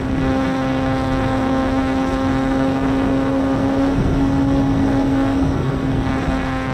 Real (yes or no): no